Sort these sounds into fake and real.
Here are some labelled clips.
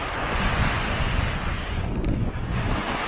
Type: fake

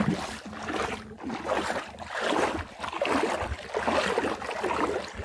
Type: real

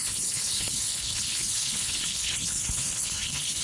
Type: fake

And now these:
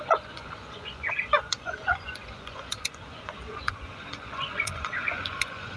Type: fake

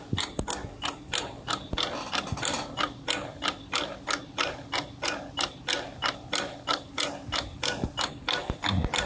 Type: real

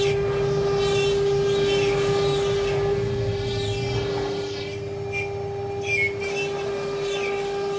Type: real